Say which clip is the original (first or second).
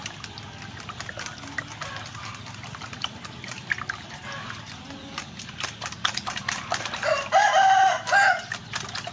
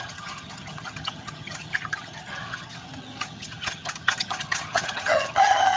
first